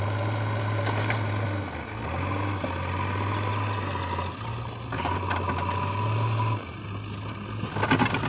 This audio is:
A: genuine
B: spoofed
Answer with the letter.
A